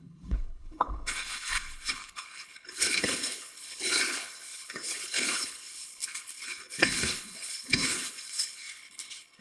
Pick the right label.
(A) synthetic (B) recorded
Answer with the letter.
A